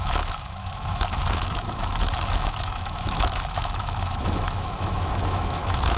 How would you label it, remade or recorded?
remade